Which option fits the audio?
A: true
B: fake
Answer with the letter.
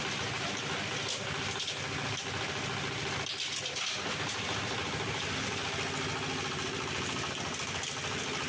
A